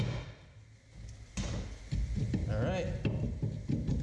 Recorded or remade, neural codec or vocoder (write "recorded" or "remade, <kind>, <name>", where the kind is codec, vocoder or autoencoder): recorded